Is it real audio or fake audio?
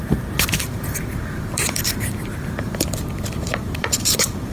fake